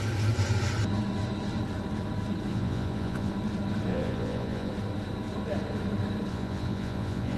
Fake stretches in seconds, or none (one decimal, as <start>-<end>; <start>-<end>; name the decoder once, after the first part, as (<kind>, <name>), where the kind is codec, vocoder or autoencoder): 2.5-3.3 (vocoder, Vocos); 3.9-4.7; 6.3-7.4